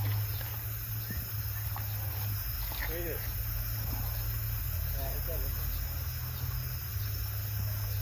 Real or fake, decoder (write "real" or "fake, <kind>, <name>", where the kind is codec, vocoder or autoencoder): real